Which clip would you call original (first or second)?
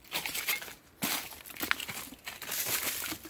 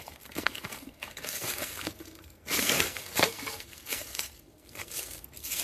first